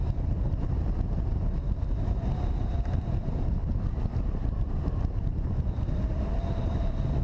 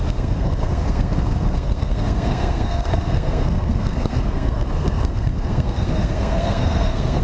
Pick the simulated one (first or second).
second